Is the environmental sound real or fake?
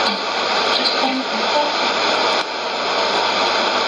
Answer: real